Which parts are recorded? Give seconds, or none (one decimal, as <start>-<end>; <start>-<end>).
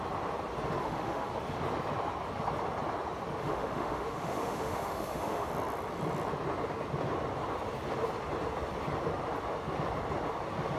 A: 0.0-0.8; 1.3-3.4; 5.5-10.8